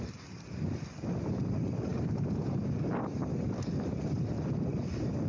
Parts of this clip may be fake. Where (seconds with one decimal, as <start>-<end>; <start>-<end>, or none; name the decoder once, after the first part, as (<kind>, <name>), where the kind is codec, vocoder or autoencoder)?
none